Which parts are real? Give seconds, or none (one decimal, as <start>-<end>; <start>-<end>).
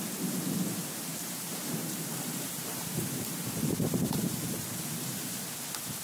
0.0-0.8; 4.4-6.0